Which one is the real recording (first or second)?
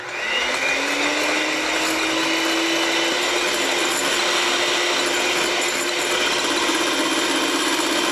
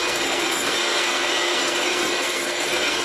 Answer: first